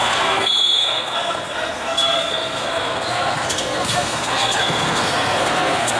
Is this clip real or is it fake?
fake